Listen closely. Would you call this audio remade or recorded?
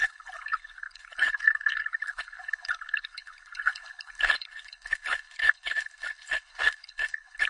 remade